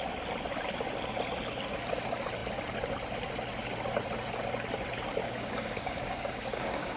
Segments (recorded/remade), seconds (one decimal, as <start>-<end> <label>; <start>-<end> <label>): 0.0-5.2 recorded; 5.2-7.0 remade